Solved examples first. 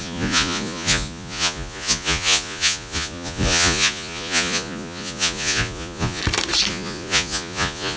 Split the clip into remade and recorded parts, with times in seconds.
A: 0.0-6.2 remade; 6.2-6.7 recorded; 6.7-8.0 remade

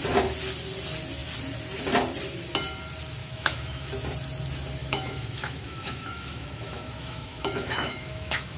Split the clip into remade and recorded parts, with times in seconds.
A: 0.0-3.2 recorded; 3.2-3.9 remade; 3.9-4.8 recorded; 4.8-8.6 remade

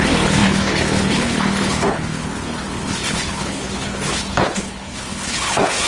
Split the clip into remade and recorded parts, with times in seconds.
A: 0.0-5.9 remade

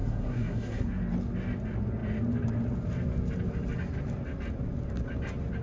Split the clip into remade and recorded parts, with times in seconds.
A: 0.0-1.0 remade; 1.0-5.6 recorded

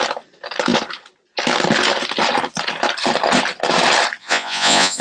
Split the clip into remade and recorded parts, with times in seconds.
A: 0.0-4.2 recorded; 4.2-5.0 remade

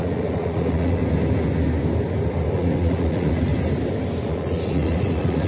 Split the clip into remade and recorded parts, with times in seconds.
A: 0.0-1.0 remade; 1.0-2.5 recorded; 2.5-3.5 remade; 3.5-4.2 recorded; 4.2-5.5 remade

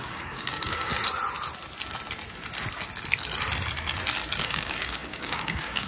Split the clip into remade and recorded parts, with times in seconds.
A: 0.0-0.9 remade; 0.9-4.4 recorded; 4.4-5.9 remade